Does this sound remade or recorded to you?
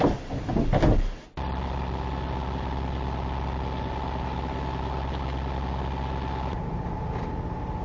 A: recorded